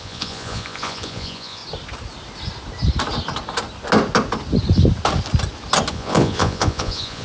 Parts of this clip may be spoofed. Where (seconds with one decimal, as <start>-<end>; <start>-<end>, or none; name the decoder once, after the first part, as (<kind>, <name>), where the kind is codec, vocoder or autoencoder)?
0.0-1.6 (vocoder, Vocos); 5.9-7.2